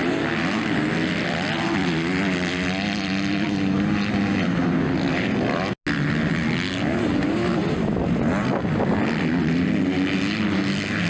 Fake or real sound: real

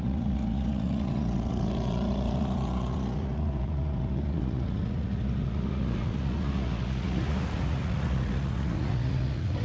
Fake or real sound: fake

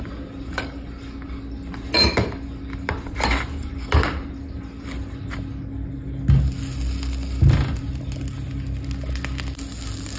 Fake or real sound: real